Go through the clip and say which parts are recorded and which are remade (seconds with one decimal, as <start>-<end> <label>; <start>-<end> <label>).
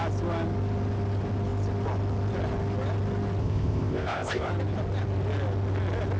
0.0-3.4 recorded; 3.4-4.5 remade; 4.5-6.2 recorded